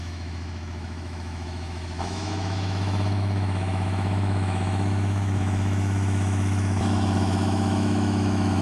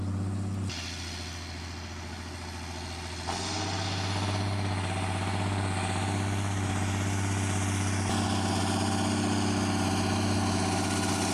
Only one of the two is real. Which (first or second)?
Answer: second